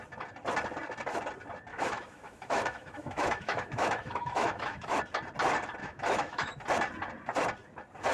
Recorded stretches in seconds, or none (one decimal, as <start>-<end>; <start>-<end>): 0.0-1.7; 5.0-5.8; 6.6-8.1